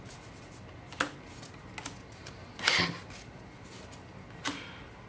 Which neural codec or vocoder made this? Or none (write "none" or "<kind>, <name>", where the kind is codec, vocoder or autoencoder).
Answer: none